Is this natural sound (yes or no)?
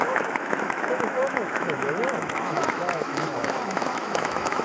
no